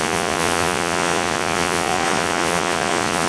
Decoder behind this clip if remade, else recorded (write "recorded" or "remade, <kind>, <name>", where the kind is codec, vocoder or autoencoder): remade, vocoder, Vocos